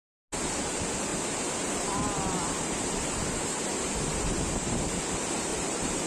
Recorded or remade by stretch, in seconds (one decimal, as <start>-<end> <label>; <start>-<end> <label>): 0.0-1.1 recorded; 1.1-4.8 remade; 4.8-5.5 recorded; 5.5-6.1 remade